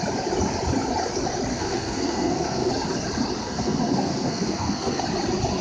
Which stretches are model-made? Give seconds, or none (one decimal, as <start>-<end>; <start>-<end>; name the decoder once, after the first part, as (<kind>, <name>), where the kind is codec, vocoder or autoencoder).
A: 1.5-2.7 (codec, SNAC); 3.4-5.0